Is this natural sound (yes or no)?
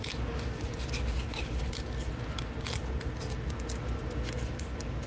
yes